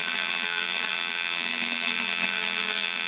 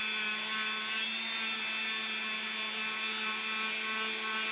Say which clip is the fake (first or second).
first